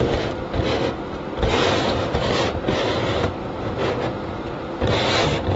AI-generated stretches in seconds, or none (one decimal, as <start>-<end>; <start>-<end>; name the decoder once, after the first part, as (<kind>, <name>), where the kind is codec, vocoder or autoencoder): none